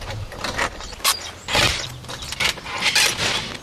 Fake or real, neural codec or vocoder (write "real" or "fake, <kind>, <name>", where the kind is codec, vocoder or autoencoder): real